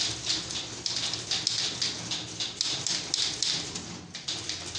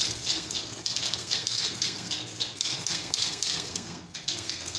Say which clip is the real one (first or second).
first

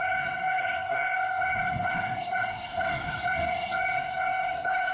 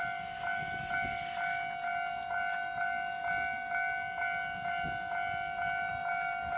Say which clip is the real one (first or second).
second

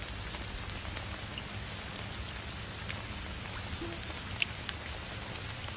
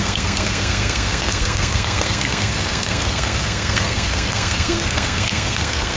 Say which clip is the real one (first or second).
first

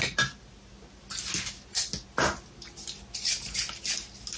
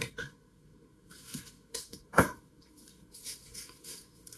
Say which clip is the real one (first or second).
first